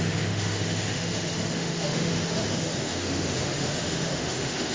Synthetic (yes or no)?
yes